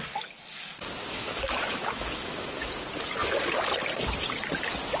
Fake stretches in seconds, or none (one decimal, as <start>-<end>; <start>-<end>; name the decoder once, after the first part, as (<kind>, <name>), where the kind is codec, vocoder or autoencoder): 1.0-2.7 (autoencoder, DAC-VAE)